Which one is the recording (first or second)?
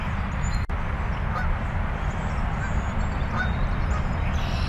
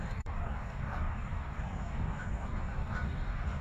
first